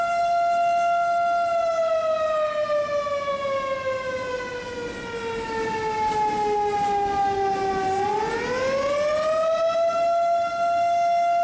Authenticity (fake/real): real